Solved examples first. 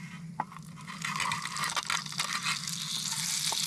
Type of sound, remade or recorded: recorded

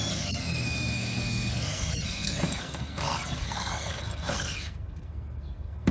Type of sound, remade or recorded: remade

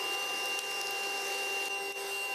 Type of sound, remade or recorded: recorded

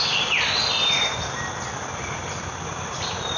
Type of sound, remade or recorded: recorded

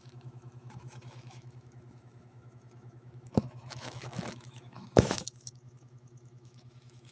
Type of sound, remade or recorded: remade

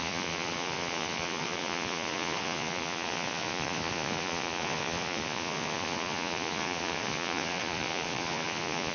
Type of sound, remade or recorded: remade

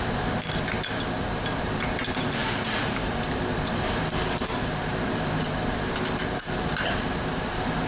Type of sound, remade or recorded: remade